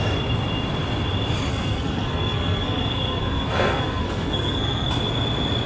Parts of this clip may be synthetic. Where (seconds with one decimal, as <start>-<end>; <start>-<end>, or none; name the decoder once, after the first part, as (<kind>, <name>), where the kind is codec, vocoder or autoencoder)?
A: 1.5-4.9 (codec, SNAC)